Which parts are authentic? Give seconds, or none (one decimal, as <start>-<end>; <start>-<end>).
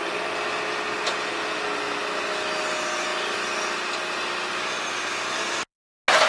0.0-6.3